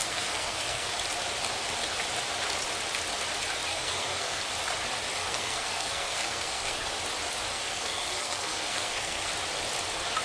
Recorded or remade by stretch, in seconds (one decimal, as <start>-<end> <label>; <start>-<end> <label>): 0.0-0.9 remade; 0.9-3.7 recorded; 3.7-4.4 remade; 4.4-5.2 recorded; 5.2-6.9 remade; 6.9-7.5 recorded; 7.5-9.3 remade; 9.3-10.2 recorded